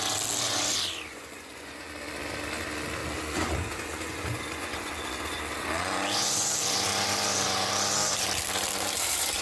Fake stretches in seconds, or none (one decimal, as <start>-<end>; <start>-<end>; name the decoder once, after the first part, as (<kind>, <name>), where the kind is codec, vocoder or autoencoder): 1.1-1.9 (vocoder, Vocos); 3.0-6.5